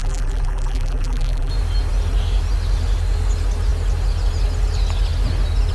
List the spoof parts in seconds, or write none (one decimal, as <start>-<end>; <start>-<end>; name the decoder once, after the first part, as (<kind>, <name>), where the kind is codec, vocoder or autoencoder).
0.0-1.5 (vocoder, BigVGAN v2)

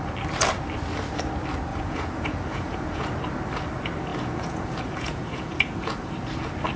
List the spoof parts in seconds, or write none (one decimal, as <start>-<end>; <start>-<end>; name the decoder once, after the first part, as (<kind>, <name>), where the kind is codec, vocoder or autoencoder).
1.7-3.1 (vocoder, Vocos); 4.1-6.1

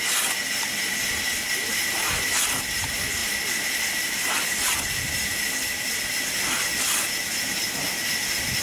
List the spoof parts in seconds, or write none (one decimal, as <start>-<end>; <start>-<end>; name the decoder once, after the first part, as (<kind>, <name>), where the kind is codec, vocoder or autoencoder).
none